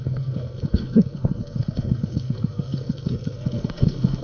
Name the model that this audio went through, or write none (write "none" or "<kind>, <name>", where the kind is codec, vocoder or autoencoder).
codec, SNAC